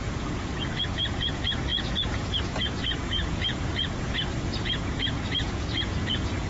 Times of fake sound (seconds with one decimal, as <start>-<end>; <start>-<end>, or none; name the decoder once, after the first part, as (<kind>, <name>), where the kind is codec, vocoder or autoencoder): 0.0-6.5 (vocoder, Vocos)